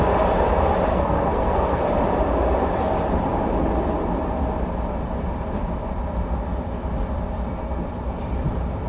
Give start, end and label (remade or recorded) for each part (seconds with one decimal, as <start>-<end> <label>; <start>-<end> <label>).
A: 0.0-0.9 recorded; 0.9-1.8 remade; 1.8-8.9 recorded